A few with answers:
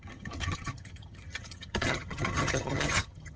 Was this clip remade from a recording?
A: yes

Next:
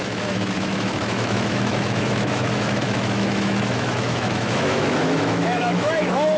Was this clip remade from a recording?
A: yes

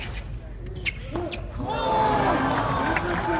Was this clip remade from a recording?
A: no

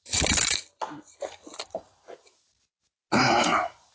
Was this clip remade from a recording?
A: no